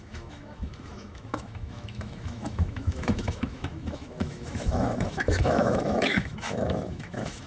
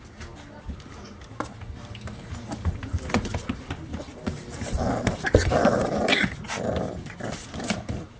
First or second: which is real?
second